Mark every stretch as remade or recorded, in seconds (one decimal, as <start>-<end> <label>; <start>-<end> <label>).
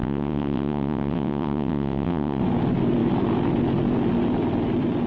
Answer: 0.0-2.4 remade; 2.4-5.1 recorded